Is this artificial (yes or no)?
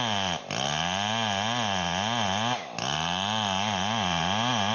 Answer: no